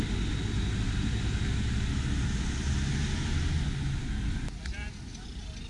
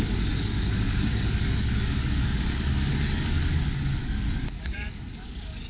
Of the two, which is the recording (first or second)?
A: first